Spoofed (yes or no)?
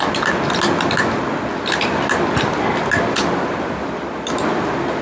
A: no